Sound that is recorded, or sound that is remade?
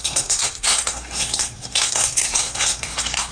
remade